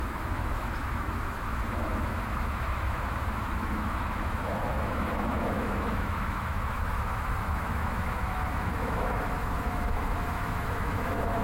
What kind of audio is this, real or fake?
fake